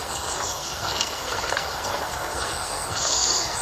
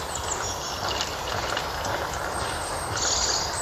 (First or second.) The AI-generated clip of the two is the first